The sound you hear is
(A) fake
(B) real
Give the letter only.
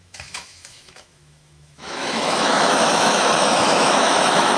A